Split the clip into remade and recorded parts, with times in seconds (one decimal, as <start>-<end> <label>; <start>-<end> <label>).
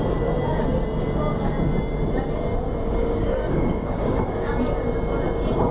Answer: 0.0-3.0 recorded; 3.0-4.5 remade; 4.5-5.7 recorded